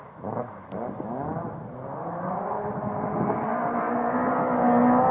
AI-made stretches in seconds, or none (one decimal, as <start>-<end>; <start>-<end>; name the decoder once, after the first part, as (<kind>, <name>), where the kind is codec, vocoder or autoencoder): none